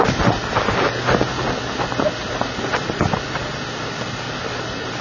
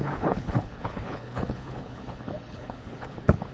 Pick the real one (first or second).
first